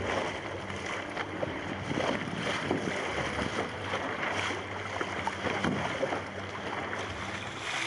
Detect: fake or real real